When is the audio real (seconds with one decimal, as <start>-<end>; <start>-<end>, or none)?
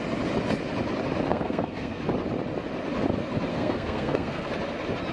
0.0-1.3; 2.0-3.5; 4.5-5.1